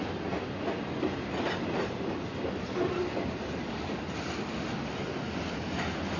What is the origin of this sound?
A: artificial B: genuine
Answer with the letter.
B